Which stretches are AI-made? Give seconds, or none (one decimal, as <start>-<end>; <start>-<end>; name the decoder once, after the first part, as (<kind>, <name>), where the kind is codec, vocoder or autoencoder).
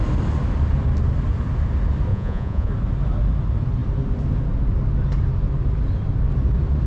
2.1-2.7 (vocoder, Vocos)